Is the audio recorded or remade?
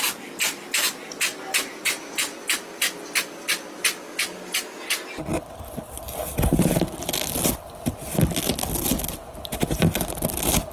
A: recorded